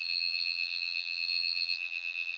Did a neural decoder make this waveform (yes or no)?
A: yes